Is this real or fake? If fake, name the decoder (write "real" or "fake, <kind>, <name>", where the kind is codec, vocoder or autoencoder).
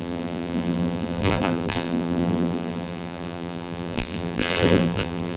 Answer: fake, vocoder, BigVGAN v2